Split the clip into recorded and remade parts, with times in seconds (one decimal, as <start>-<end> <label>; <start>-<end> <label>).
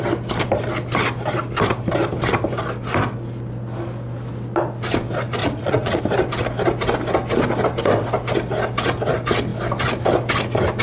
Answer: 0.0-5.4 recorded; 5.4-6.0 remade; 6.0-10.8 recorded